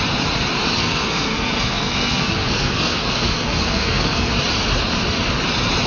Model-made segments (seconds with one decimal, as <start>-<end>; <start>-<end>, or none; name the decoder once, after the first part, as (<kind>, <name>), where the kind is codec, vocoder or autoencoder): 0.8-4.3 (codec, SNAC)